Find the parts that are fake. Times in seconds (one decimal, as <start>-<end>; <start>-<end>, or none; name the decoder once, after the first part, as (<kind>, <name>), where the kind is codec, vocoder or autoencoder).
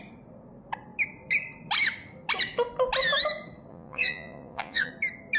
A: 3.7-4.9 (vocoder, Vocos)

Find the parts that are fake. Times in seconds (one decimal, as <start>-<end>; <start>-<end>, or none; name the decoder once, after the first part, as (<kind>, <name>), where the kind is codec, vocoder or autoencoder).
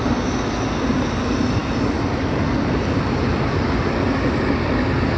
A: none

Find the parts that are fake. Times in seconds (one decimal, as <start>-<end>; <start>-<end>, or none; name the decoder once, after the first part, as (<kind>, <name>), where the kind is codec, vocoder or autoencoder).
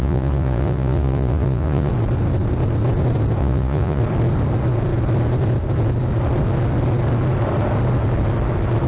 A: 0.0-1.9 (vocoder, Vocos); 3.4-4.0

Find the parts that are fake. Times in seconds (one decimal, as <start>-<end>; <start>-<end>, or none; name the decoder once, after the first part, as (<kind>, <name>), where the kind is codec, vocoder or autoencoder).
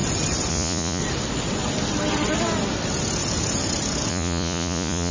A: 0.5-1.0 (vocoder, Vocos); 4.1-5.1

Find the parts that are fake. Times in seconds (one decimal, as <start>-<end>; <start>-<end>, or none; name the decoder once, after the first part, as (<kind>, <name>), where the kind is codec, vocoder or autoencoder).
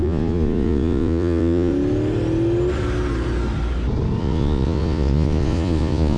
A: 0.0-1.7 (vocoder, Vocos); 4.2-6.2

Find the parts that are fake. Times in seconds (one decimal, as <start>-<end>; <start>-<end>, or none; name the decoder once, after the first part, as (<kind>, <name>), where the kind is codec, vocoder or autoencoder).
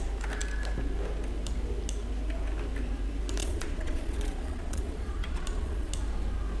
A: 3.4-5.9 (vocoder, Vocos)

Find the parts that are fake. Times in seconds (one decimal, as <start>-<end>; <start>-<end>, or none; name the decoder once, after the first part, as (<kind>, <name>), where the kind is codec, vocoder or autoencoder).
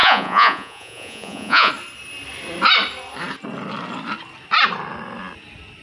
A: 0.0-1.7 (vocoder, Vocos)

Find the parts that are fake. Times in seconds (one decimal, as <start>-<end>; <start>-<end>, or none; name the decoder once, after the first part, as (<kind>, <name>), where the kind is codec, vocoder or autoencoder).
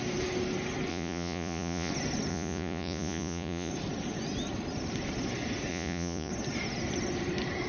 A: 0.9-1.9 (vocoder, Vocos); 2.3-3.7; 5.7-6.3